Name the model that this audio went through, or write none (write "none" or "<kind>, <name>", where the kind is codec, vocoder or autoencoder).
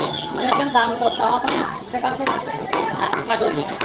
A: vocoder, HiFi-GAN